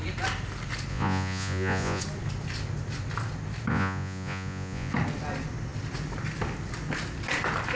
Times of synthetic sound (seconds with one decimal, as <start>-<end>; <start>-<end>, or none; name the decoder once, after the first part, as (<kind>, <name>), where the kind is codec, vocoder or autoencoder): 0.9-2.0 (vocoder, Vocos); 3.7-4.9